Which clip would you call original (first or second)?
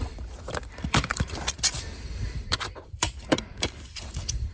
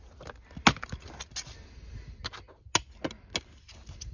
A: second